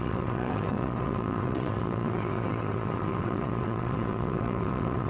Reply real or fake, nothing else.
fake